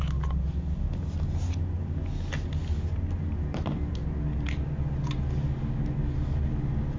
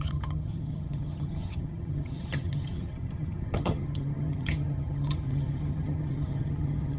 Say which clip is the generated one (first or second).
second